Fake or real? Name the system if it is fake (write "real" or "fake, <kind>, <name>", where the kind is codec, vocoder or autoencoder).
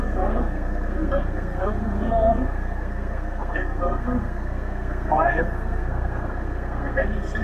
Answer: fake, codec, SNAC